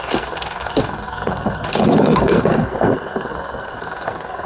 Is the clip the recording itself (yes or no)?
no